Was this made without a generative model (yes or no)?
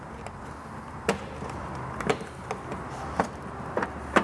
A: yes